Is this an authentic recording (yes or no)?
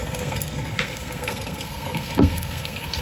no